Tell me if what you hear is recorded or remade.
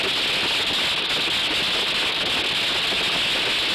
recorded